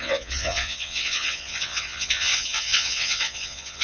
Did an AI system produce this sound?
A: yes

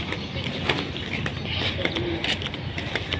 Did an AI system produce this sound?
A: no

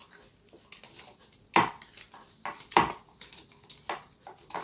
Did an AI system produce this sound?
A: no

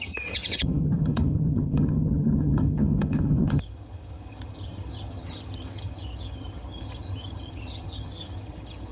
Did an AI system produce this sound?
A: yes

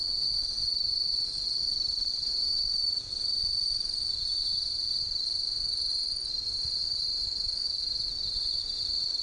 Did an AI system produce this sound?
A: no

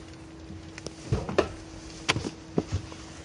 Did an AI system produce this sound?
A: no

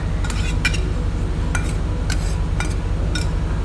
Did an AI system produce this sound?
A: no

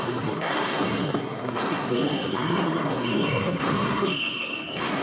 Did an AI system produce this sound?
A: yes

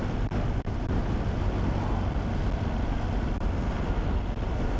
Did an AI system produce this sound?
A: no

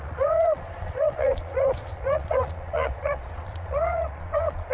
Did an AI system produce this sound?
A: yes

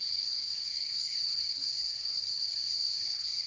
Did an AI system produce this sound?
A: yes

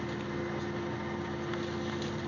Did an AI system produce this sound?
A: no